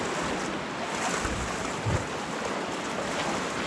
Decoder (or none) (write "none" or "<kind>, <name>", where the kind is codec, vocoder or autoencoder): none